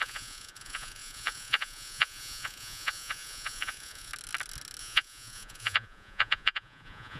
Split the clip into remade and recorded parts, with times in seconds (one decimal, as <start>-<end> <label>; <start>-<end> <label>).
0.0-4.1 remade; 4.1-4.8 recorded; 4.8-7.2 remade